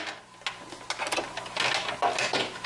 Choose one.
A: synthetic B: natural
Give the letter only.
B